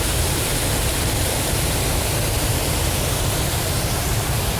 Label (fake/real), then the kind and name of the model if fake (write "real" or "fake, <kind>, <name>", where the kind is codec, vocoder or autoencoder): fake, vocoder, BigVGAN v2